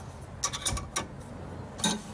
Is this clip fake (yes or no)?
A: no